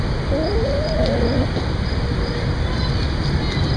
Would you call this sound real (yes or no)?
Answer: yes